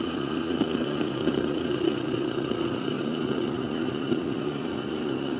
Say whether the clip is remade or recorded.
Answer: remade